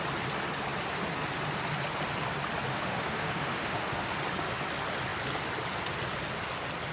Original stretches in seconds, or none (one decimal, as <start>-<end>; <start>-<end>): 0.0-2.7; 4.1-6.9